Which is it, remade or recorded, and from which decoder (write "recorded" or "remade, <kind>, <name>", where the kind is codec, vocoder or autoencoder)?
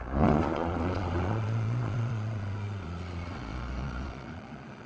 remade, vocoder, Vocos